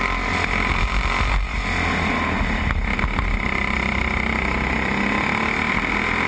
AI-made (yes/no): no